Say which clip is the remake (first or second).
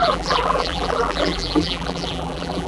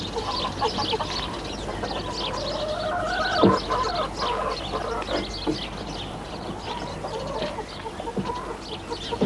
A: first